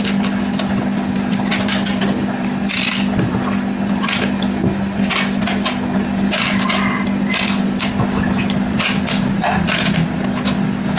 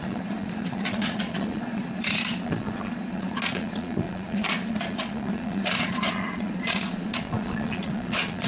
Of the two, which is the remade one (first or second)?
second